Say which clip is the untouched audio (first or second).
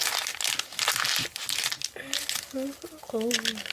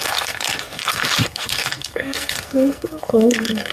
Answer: first